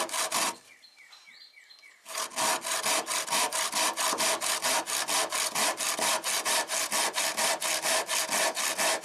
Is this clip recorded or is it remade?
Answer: recorded